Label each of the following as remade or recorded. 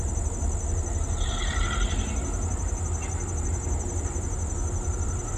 recorded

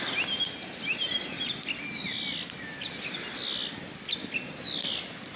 recorded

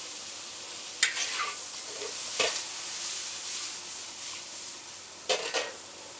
remade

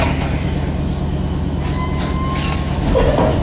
recorded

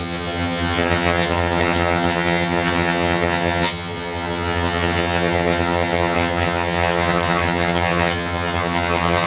remade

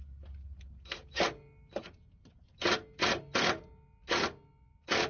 recorded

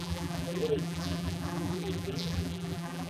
remade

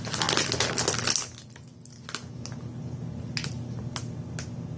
recorded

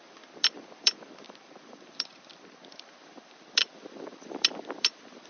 remade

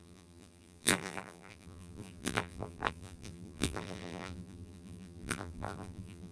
remade